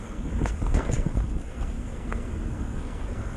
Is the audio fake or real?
fake